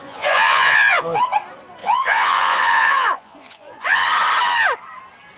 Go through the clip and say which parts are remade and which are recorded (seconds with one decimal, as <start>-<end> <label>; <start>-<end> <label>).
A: 0.0-1.2 remade; 1.2-1.8 recorded; 1.8-4.0 remade; 4.0-5.4 recorded